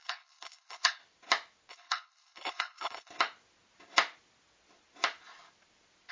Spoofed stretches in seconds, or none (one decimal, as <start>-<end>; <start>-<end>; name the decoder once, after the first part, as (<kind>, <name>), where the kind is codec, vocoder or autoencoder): 0.0-1.0 (codec, HILCodec); 1.7-3.1